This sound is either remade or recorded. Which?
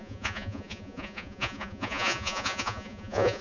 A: remade